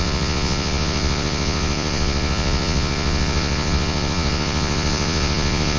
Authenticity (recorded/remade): remade